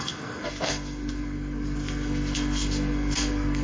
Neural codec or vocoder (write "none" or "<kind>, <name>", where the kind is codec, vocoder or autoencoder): codec, SNAC